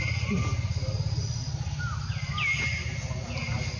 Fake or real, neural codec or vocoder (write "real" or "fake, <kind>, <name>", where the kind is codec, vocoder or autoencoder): real